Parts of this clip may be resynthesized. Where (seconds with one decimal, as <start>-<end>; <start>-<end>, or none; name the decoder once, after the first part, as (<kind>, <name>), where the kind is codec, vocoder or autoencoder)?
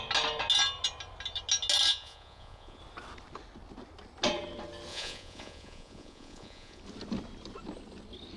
1.9-2.8 (vocoder, Vocos); 4.9-6.8